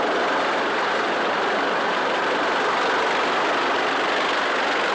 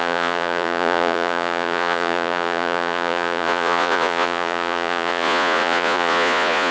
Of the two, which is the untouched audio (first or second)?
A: first